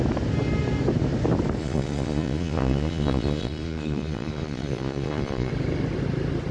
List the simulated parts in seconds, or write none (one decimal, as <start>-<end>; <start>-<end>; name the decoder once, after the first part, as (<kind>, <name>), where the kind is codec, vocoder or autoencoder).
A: 1.6-5.5 (vocoder, Vocos)